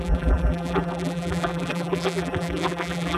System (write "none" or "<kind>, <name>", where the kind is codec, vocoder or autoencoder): vocoder, BigVGAN v2